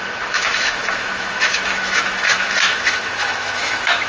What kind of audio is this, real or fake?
fake